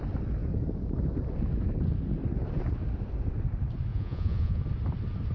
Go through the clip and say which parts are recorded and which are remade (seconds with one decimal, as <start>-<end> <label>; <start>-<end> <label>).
0.0-3.9 recorded; 3.9-4.6 remade; 4.6-5.3 recorded